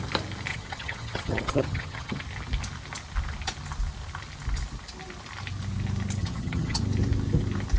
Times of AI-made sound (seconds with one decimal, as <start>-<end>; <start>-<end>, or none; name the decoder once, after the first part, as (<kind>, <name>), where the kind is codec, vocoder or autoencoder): 0.5-2.2 (vocoder, HiFi-GAN); 6.2-6.8